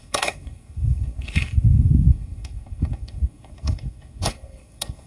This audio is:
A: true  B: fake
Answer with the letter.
B